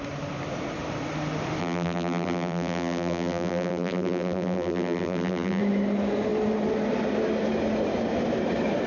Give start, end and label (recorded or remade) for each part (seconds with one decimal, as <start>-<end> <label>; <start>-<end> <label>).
0.0-1.6 recorded; 1.6-5.6 remade; 5.6-8.9 recorded